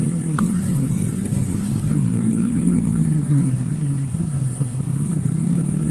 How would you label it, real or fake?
fake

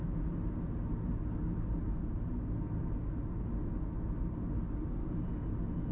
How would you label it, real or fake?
real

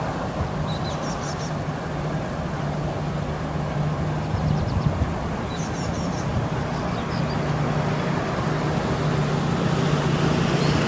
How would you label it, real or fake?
real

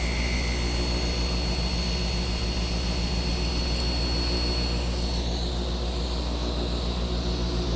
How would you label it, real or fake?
real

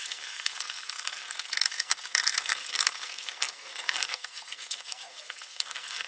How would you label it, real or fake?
fake